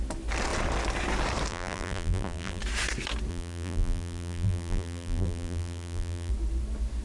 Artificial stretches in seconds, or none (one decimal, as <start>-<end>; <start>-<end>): 1.5-2.6; 3.3-6.3